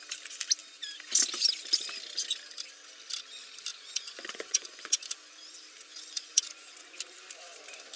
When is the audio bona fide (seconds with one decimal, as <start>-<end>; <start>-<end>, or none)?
0.0-3.7; 5.3-5.9; 7.0-8.0